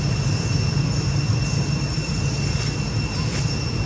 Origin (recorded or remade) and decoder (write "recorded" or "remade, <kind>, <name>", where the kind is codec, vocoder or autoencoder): recorded